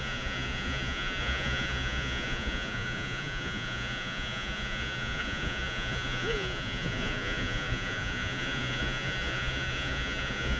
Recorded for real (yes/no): no